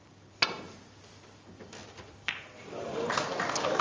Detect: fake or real real